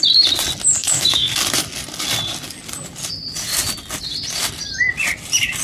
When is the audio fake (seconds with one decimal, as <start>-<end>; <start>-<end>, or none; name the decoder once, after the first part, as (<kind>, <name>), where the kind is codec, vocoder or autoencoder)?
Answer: 0.8-1.3 (autoencoder, DAC-VAE)